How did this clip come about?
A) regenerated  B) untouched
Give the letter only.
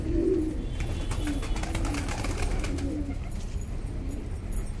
B